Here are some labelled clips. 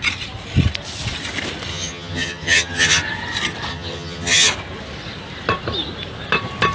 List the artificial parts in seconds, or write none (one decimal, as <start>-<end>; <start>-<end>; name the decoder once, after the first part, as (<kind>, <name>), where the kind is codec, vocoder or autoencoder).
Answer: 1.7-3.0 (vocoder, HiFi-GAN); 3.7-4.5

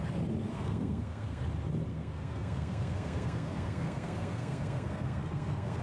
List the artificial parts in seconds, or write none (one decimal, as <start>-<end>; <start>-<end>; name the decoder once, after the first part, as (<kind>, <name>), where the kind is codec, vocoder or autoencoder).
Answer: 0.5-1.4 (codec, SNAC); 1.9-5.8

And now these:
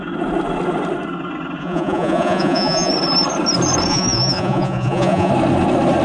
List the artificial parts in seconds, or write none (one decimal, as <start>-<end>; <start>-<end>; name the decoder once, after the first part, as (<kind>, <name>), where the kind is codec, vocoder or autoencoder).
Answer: 1.6-2.9 (vocoder, Vocos); 3.9-5.3